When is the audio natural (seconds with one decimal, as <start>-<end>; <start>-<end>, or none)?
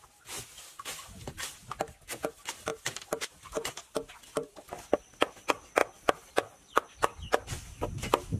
0.0-2.7; 3.8-5.8; 6.9-8.4